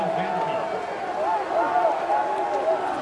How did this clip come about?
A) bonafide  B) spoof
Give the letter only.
A